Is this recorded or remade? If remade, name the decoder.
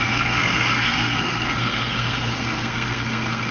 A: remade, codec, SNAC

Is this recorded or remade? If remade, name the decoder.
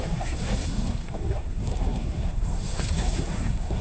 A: remade, codec, SNAC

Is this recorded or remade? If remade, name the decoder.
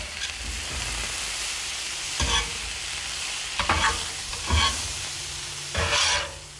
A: recorded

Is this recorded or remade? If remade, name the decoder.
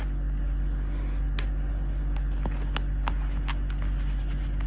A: recorded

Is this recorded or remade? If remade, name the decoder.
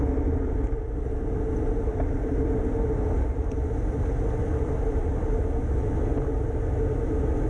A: recorded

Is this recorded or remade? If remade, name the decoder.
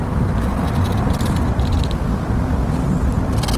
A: recorded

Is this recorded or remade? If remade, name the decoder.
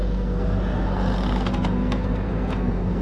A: remade, codec, SNAC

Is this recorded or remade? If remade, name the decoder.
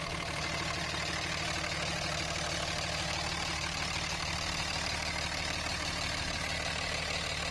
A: recorded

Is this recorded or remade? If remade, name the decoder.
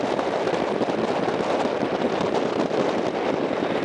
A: recorded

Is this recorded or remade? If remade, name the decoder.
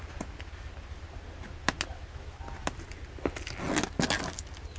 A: recorded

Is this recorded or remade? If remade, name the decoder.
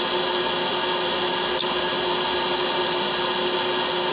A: recorded